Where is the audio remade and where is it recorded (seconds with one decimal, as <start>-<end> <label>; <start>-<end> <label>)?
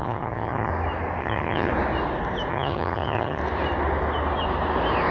0.0-0.7 remade; 0.7-1.2 recorded; 1.2-1.7 remade; 1.7-2.5 recorded; 2.5-3.4 remade; 3.4-5.1 recorded